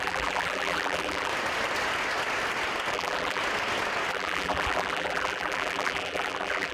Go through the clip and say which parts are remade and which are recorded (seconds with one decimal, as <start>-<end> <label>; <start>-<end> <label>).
0.0-1.3 remade; 1.3-2.9 recorded; 2.9-3.4 remade; 3.4-4.1 recorded; 4.1-6.7 remade